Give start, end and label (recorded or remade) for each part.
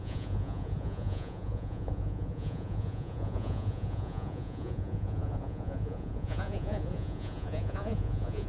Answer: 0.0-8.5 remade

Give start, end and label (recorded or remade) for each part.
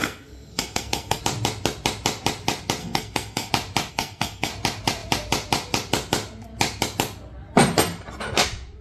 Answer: 0.0-1.2 remade; 1.2-2.8 recorded; 2.8-3.5 remade; 3.5-3.9 recorded; 3.9-4.5 remade; 4.5-8.8 recorded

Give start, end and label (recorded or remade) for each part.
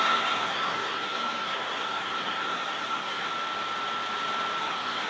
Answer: 0.0-3.3 remade; 3.3-4.6 recorded; 4.6-5.1 remade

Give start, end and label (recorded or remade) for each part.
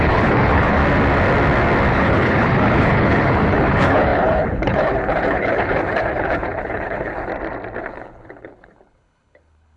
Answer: 0.0-0.8 remade; 0.8-1.9 recorded; 1.9-7.3 remade; 7.3-7.8 recorded; 7.8-9.8 remade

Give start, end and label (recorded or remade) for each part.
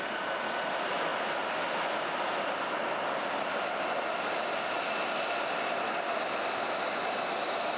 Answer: 0.0-7.8 recorded